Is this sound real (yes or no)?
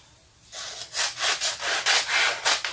yes